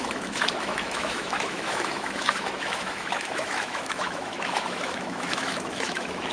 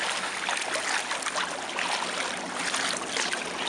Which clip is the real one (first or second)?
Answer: second